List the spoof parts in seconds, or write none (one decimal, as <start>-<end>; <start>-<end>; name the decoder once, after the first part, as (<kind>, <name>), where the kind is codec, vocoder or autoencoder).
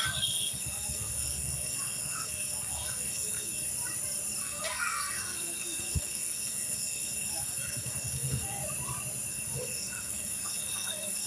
0.0-3.7 (codec, SNAC); 4.4-8.6; 9.3-11.3